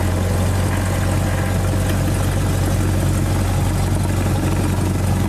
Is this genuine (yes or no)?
yes